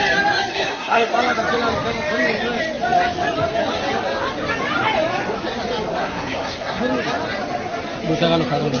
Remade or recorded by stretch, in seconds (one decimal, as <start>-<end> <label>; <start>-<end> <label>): 0.0-0.5 recorded; 0.5-1.1 remade; 1.1-6.0 recorded; 6.0-6.8 remade; 6.8-8.8 recorded